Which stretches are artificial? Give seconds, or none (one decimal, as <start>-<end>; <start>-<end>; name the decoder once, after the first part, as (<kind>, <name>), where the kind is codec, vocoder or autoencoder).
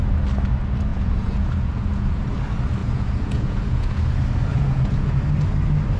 0.9-2.2 (vocoder, Vocos); 2.8-4.0; 4.5-5.2